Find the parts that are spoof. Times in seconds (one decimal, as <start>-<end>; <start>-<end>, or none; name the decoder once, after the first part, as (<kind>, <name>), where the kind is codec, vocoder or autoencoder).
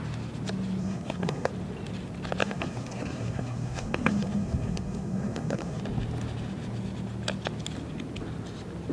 0.8-1.5 (codec, SNAC); 2.4-5.8